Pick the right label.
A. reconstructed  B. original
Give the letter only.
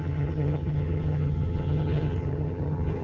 A